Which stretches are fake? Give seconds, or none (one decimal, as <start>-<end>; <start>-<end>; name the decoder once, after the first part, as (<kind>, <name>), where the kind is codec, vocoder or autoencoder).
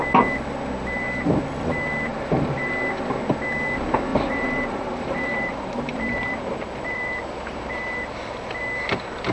2.1-2.7 (vocoder, BigVGAN v2); 4.1-8.6